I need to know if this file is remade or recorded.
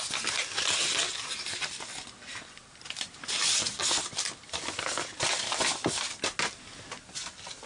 recorded